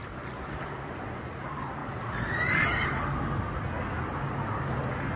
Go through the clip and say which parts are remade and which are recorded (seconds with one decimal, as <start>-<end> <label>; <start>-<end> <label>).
0.0-5.2 recorded